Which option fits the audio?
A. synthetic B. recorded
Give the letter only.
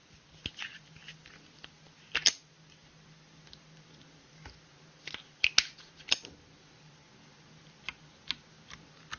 B